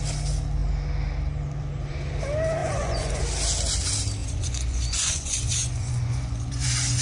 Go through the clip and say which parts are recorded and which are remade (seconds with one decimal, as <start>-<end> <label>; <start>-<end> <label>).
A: 0.0-2.6 recorded; 2.6-3.2 remade; 3.2-4.2 recorded; 4.2-7.0 remade